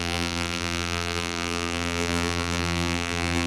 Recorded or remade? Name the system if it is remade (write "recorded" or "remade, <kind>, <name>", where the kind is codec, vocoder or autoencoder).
remade, vocoder, BigVGAN v2